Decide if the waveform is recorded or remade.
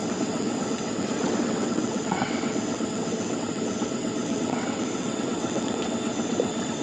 remade